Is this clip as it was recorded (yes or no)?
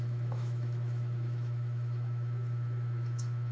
no